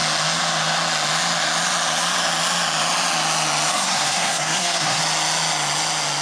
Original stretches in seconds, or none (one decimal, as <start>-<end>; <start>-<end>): 0.0-3.7; 5.0-6.2